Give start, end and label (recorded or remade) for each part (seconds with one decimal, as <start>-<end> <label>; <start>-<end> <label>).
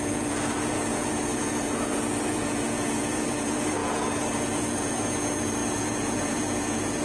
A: 0.0-7.0 remade